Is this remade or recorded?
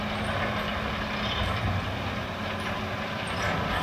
recorded